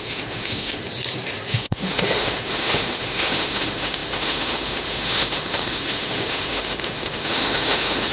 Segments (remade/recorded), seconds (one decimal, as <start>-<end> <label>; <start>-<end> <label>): 0.0-0.8 remade; 0.8-1.5 recorded; 1.5-8.1 remade